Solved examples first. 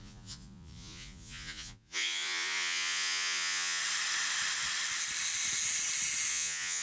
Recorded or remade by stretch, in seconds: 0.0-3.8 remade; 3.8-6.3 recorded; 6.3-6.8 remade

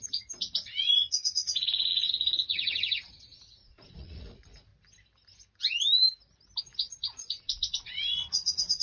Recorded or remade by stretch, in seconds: 0.0-4.7 remade; 4.7-6.6 recorded; 6.6-8.8 remade